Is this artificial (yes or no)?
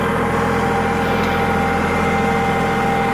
no